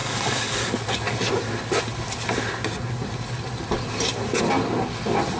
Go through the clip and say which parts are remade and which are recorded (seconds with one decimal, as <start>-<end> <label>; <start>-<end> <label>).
0.0-0.7 remade; 0.7-5.4 recorded